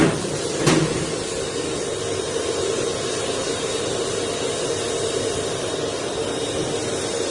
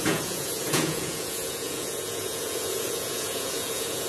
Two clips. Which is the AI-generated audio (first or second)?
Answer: second